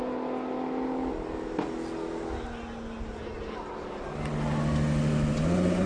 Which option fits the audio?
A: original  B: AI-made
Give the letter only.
A